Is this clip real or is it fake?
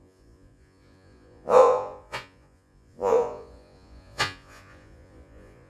fake